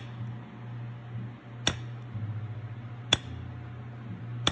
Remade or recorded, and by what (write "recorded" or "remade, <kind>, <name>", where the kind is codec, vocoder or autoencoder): recorded